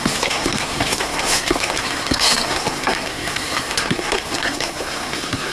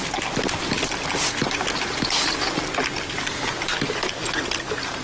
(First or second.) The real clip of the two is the second